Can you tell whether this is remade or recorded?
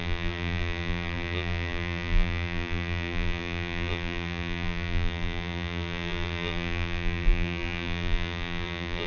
remade